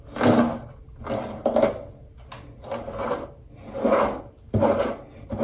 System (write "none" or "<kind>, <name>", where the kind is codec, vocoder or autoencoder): none